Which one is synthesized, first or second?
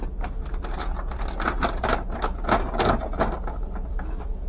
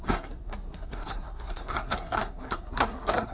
second